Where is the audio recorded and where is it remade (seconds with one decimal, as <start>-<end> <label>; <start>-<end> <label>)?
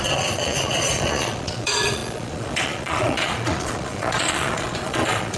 0.0-5.4 remade